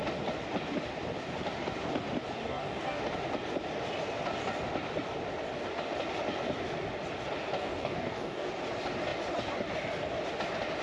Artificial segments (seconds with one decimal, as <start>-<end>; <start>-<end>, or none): 2.4-3.0; 7.6-8.5